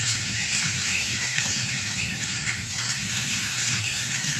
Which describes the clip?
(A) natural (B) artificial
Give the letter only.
B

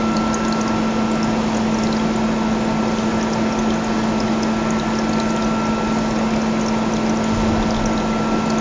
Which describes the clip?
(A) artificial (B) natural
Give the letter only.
B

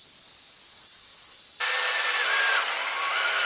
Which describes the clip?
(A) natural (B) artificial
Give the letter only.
A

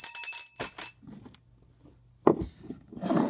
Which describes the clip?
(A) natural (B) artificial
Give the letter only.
A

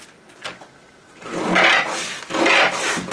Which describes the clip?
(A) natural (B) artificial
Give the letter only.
A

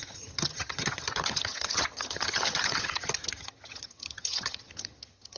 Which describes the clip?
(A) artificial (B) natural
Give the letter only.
A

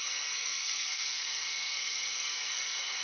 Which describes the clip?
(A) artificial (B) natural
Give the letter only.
A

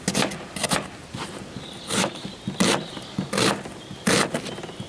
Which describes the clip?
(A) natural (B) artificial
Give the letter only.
A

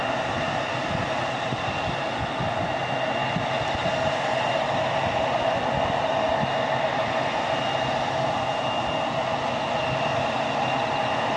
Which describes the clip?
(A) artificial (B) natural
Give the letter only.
B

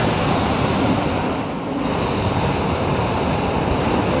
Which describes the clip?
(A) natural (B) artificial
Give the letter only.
A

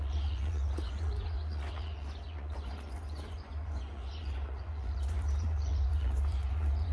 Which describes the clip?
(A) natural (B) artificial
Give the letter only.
B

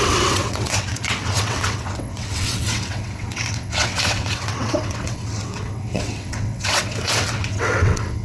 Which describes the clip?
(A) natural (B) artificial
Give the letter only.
B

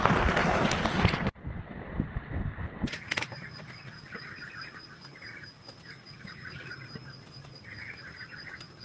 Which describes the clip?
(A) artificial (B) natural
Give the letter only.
B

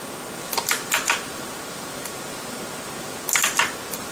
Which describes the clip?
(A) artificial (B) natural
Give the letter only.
B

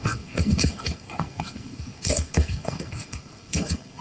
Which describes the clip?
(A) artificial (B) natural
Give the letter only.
A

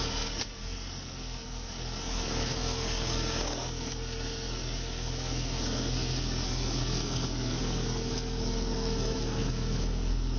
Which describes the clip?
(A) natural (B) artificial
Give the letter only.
B